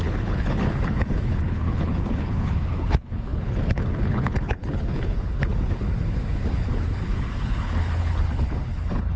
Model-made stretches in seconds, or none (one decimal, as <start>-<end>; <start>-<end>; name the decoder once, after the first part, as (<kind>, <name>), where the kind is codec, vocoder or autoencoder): 0.0-9.2 (codec, HILCodec)